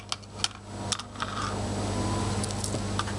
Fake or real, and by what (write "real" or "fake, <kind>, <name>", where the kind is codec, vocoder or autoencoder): real